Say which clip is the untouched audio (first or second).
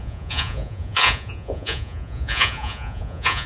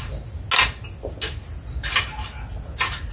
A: second